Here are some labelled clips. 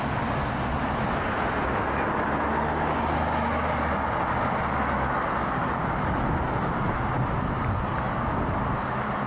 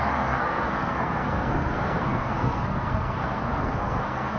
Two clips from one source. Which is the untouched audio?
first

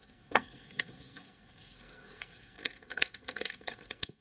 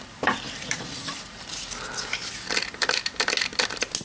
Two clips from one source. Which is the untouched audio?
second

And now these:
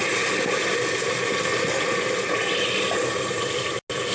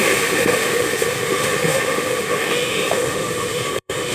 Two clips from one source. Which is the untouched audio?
first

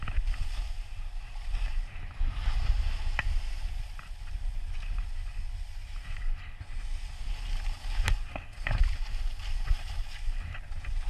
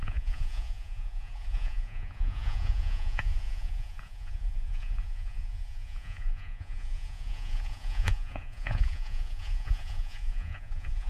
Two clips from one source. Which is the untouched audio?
first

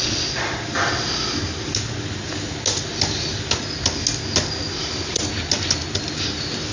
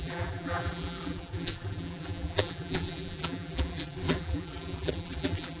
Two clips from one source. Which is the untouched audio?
first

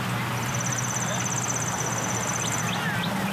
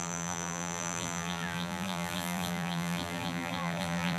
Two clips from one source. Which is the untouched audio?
first